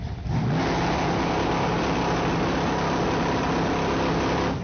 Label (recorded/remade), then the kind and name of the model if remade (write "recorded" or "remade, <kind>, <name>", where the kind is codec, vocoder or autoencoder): recorded